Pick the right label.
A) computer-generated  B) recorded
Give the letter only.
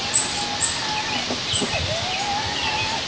B